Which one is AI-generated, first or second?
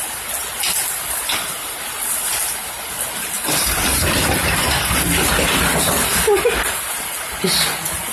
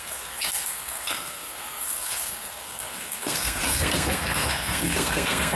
second